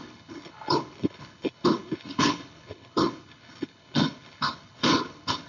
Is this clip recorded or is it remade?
remade